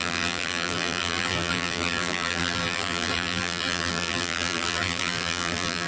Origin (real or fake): fake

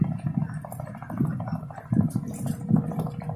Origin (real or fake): real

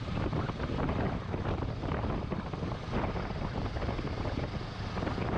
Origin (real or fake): real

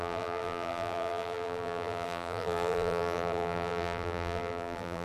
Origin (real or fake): fake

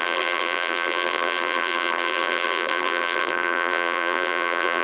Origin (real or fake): fake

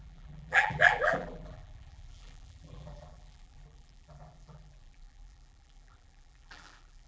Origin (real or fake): fake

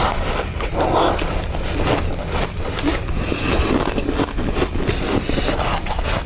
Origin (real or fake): real